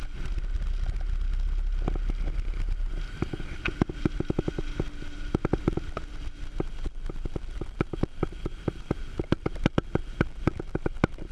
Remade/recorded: recorded